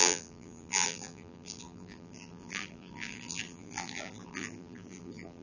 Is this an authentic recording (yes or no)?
no